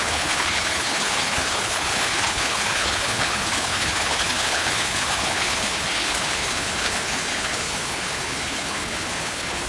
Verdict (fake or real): fake